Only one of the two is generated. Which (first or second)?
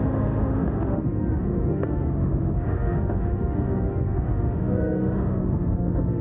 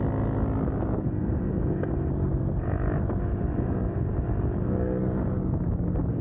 first